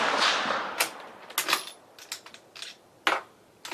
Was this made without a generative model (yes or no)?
yes